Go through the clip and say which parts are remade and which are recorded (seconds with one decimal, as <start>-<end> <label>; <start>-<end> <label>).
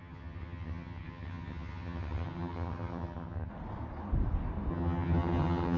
0.0-3.5 remade; 3.5-4.7 recorded; 4.7-5.8 remade